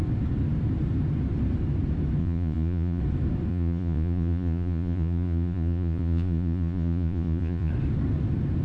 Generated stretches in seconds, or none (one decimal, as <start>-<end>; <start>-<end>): 2.2-3.0; 3.5-7.7